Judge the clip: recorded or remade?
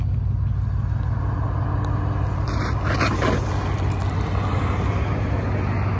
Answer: recorded